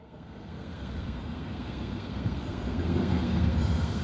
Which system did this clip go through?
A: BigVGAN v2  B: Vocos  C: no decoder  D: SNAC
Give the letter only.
D